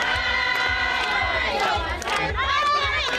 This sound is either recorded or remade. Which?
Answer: recorded